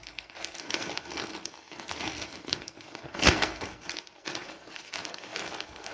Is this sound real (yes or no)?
no